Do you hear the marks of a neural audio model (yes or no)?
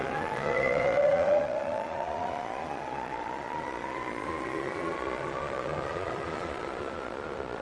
yes